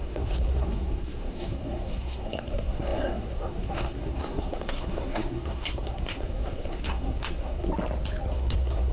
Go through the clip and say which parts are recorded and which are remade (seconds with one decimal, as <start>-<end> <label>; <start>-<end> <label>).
0.0-7.7 remade; 7.7-8.3 recorded; 8.3-8.9 remade